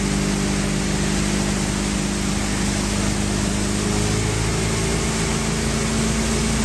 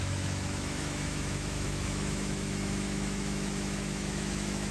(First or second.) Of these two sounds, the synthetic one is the second